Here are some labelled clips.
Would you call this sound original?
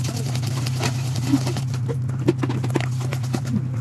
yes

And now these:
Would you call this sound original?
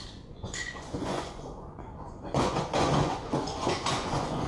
no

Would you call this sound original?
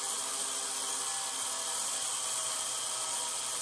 yes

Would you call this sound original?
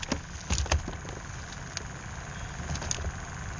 yes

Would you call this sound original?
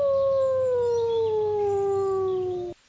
yes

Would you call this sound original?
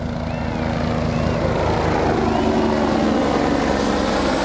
yes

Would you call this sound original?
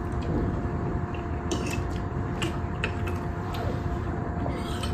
no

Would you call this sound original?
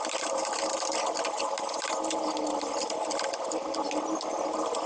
yes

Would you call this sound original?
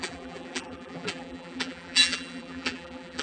no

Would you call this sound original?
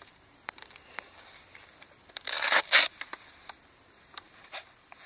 no